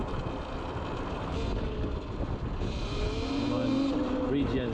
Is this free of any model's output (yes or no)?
yes